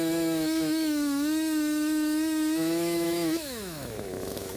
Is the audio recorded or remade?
remade